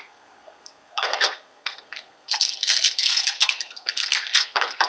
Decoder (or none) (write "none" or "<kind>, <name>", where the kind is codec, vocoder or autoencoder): codec, SNAC